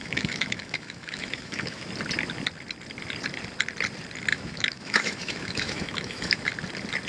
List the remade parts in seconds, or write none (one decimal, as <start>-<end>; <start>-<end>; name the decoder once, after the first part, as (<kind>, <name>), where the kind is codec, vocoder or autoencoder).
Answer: 0.0-1.9 (autoencoder, DAC-VAE); 4.3-6.5